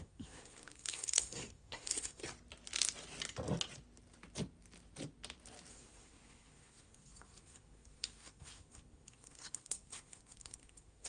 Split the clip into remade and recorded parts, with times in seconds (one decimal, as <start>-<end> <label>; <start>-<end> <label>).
0.0-2.2 remade; 2.2-5.7 recorded; 5.7-11.1 remade